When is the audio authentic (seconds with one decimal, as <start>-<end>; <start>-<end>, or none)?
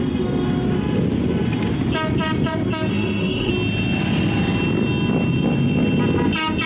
0.0-2.9; 3.5-6.7